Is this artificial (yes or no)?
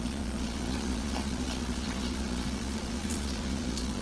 yes